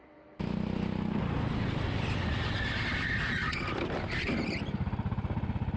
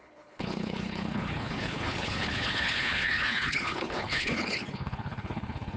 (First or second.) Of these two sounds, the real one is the first